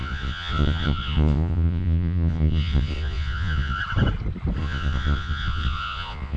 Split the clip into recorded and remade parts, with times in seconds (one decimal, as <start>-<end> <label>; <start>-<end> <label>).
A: 0.0-3.8 remade; 3.8-4.6 recorded; 4.6-6.4 remade